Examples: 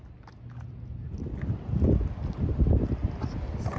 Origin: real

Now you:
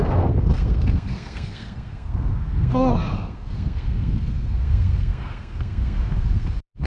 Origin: fake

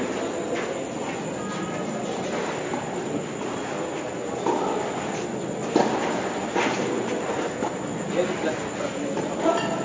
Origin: real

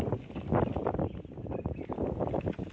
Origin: real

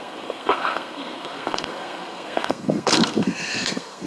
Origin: fake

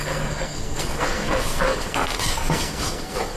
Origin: fake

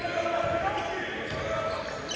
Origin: real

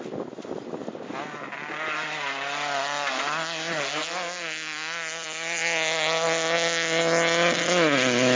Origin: real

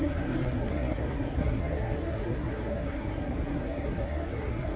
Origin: fake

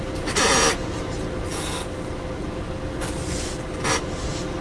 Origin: real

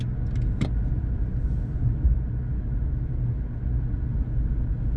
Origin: real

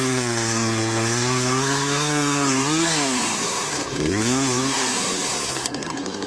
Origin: fake